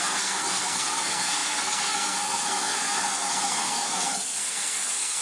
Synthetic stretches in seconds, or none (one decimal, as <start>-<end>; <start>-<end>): 0.0-5.2